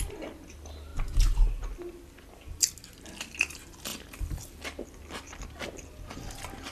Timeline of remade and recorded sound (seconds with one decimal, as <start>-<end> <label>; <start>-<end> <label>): 0.0-6.7 recorded